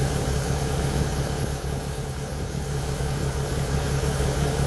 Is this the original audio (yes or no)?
no